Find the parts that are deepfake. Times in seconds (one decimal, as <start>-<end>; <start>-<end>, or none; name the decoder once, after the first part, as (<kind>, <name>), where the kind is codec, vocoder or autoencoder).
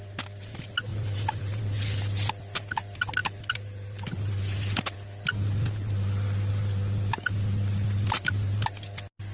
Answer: 0.9-1.6 (vocoder, BigVGAN v2)